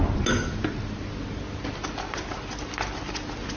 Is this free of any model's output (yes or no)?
yes